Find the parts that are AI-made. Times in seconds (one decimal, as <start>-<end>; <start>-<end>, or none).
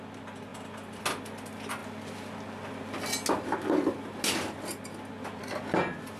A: none